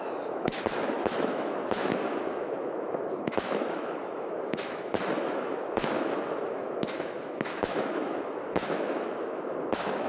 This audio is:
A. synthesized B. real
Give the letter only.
A